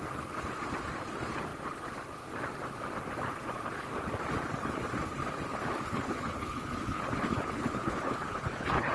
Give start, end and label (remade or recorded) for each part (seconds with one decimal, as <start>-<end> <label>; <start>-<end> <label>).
0.0-5.5 recorded; 5.5-8.9 remade